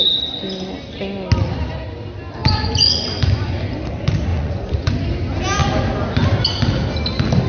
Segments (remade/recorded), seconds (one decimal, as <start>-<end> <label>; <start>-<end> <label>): 0.0-2.4 recorded; 2.4-3.7 remade; 3.7-4.3 recorded; 4.3-4.9 remade; 4.9-7.5 recorded